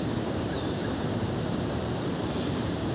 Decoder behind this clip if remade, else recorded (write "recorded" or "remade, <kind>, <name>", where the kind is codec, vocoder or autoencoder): remade, vocoder, BigVGAN v2